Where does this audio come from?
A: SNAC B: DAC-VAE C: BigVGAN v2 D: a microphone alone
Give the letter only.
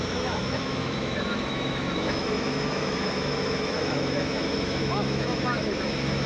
B